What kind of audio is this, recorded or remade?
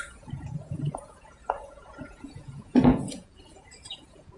remade